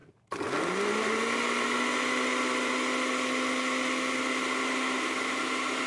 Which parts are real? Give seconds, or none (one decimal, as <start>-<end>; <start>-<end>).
0.0-5.9